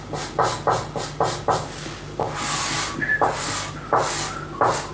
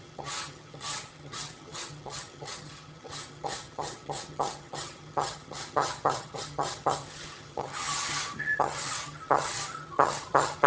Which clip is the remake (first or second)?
second